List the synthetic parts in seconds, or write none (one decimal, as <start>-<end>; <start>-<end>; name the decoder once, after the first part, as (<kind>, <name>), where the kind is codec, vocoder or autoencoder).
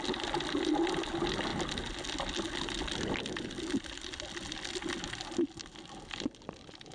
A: none